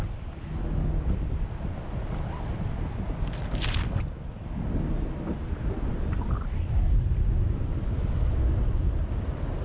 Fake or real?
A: real